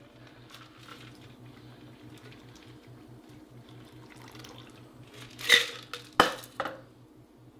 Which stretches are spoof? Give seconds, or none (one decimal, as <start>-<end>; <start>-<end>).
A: none